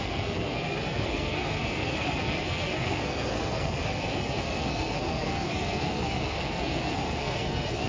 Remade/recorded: remade